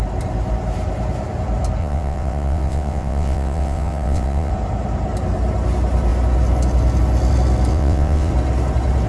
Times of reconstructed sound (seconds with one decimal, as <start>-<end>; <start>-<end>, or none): 1.8-4.5; 7.7-8.3